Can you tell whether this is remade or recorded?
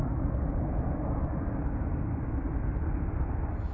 recorded